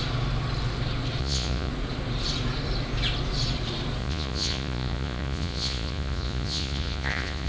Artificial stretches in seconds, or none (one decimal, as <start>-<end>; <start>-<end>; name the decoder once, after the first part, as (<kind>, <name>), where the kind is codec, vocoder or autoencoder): 1.2-1.7 (vocoder, Vocos); 4.0-7.5